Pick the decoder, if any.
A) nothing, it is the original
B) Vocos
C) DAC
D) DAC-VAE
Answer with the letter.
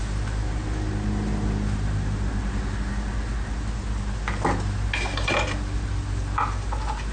A